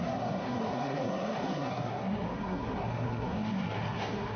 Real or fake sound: fake